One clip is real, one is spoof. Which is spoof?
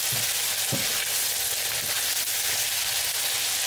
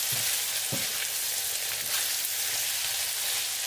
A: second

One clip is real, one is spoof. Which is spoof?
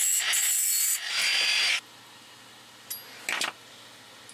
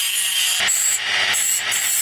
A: second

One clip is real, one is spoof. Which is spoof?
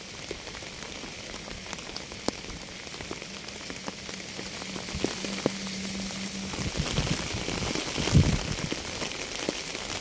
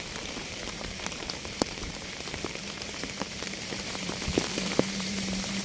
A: second